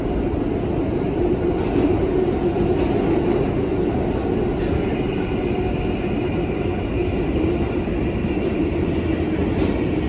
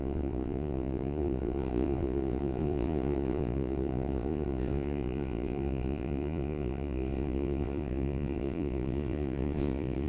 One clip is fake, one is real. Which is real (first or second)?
first